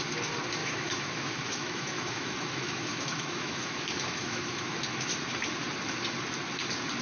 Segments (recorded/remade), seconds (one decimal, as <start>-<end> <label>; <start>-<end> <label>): 0.0-0.6 recorded; 0.6-4.8 remade; 4.8-7.0 recorded